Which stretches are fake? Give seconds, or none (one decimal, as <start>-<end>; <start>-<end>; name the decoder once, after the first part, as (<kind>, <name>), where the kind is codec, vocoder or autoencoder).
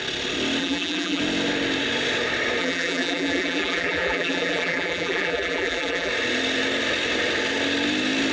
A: 0.6-1.2 (vocoder, BigVGAN v2); 2.6-6.1